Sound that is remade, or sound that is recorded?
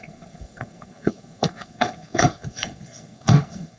remade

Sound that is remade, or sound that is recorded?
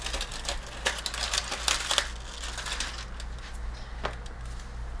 recorded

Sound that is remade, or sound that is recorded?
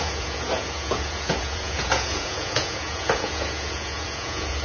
remade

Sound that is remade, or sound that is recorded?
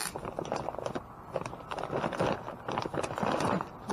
recorded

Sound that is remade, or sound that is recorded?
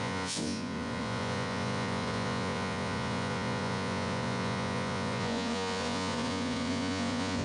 remade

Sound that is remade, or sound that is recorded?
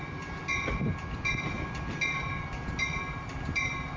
recorded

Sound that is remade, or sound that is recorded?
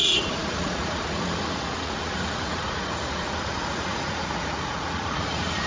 remade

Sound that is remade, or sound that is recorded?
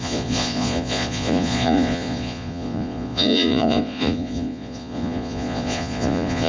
remade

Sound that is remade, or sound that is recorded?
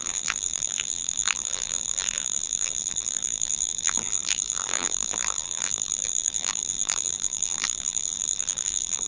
remade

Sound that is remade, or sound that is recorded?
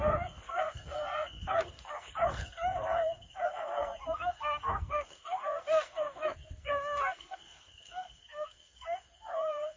remade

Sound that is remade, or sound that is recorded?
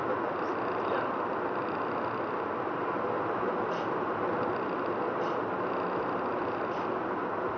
recorded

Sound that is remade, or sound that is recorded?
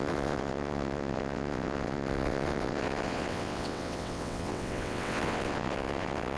remade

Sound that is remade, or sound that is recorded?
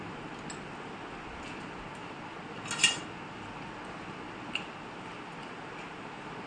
recorded